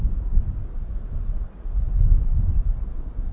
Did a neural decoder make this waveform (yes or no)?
no